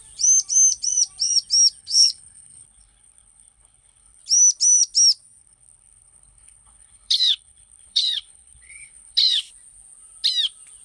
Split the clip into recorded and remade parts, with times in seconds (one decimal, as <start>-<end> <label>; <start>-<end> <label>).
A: 0.0-1.8 recorded; 1.8-4.2 remade; 4.2-5.4 recorded; 5.4-9.5 remade; 9.5-10.8 recorded